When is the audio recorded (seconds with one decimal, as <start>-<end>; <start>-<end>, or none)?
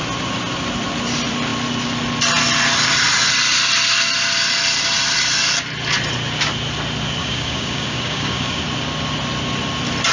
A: 0.0-7.2; 8.6-10.1